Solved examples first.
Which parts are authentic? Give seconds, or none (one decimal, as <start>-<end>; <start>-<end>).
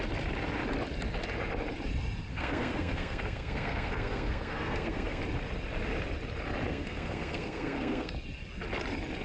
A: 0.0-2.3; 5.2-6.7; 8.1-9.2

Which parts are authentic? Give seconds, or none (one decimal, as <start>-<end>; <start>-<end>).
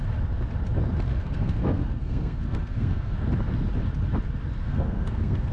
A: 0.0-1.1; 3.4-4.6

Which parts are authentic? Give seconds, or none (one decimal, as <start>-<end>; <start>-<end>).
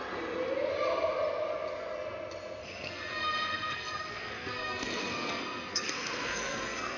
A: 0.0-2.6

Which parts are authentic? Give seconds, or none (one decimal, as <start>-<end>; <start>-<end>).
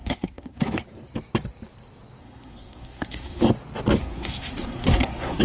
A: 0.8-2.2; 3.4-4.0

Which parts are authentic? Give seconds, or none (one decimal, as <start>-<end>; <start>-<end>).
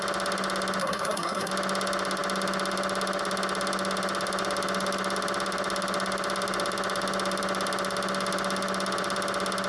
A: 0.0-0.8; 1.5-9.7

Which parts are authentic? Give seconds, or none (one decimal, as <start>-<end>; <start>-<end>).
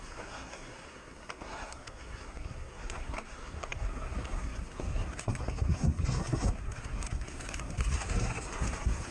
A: none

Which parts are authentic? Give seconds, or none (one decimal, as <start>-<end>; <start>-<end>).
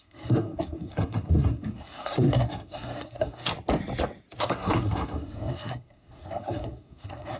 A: 3.5-4.4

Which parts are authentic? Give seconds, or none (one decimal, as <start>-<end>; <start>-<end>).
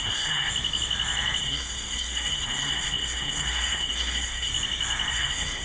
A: 0.5-1.4; 4.5-5.1